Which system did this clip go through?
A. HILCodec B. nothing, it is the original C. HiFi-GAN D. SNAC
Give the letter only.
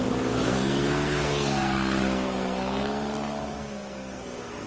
D